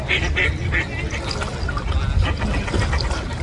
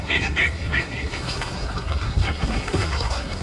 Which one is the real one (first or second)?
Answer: first